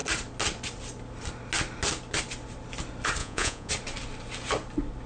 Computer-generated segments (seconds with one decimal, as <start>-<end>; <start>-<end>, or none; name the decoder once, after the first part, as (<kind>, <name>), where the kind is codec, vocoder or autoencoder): 3.2-3.7 (vocoder, Vocos)